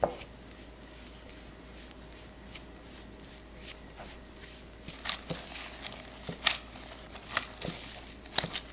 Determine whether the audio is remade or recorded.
recorded